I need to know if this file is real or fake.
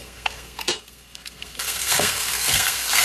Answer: fake